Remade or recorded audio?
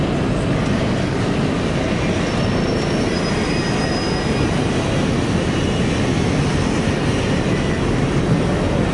recorded